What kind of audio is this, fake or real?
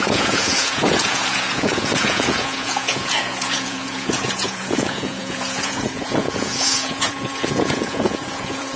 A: fake